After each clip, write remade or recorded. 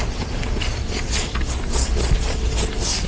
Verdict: recorded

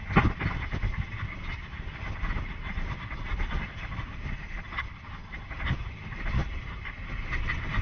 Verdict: recorded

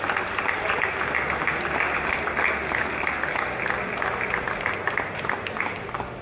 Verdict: recorded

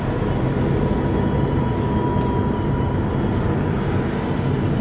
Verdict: recorded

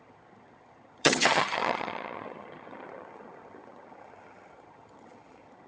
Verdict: remade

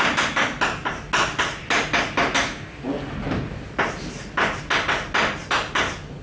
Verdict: recorded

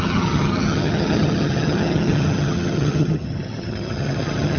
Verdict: remade